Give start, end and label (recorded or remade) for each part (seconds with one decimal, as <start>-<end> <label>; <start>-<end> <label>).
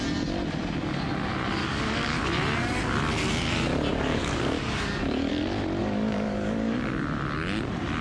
0.0-1.6 recorded; 1.6-2.2 remade; 2.2-3.9 recorded; 3.9-5.3 remade; 5.3-5.8 recorded; 5.8-7.0 remade; 7.0-8.0 recorded